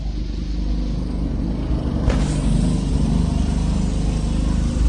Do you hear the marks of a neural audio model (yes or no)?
no